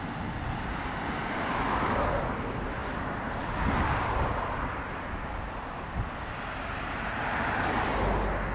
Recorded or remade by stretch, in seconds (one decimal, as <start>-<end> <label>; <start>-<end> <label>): 0.0-8.5 recorded